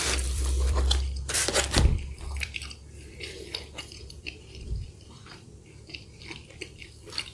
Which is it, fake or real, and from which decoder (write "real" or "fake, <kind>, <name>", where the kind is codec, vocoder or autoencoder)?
fake, vocoder, BigVGAN v2